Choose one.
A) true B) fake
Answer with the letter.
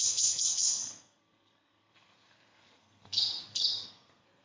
B